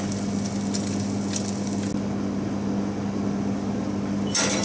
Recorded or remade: recorded